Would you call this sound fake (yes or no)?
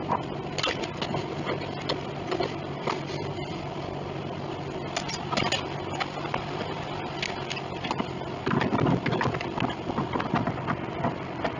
no